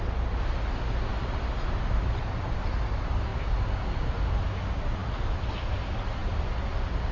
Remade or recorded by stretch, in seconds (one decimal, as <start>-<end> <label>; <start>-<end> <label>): 0.0-7.1 recorded